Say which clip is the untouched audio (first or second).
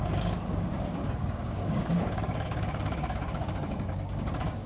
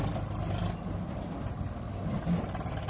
second